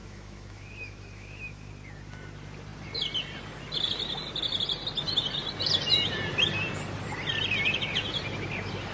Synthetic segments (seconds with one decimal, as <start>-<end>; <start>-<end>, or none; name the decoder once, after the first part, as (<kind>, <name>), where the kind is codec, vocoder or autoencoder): 0.0-1.7 (autoencoder, DAC-VAE)